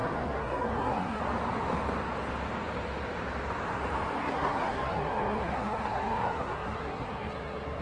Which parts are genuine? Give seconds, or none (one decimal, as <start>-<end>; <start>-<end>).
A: 1.2-4.2